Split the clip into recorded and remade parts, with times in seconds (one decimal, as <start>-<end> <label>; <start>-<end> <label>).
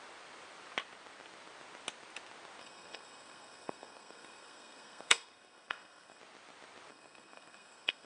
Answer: 0.0-2.6 recorded; 2.6-6.2 remade; 6.2-6.9 recorded; 6.9-8.1 remade